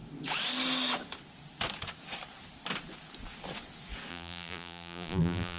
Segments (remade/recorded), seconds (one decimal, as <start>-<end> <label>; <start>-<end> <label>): 0.0-4.1 recorded; 4.1-5.6 remade